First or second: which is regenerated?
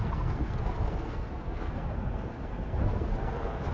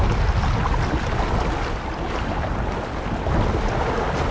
first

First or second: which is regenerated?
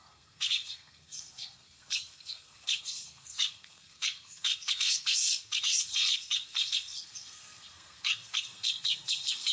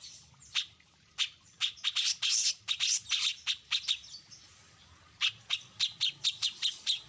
first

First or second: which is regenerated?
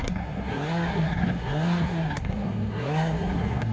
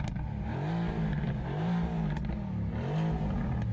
first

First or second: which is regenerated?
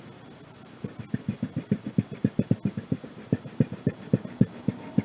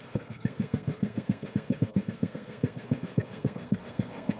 second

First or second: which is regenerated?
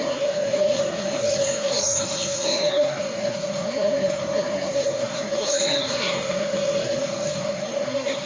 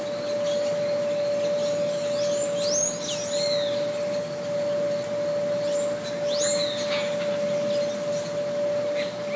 first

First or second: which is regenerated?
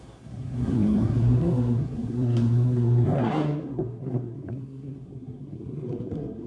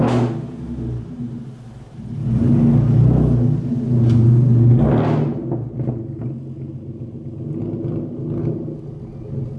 first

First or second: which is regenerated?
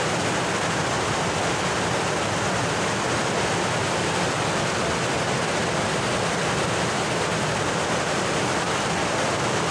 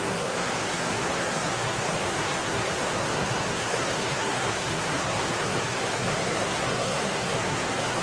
second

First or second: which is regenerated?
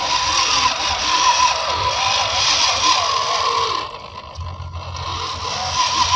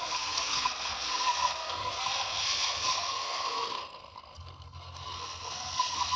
second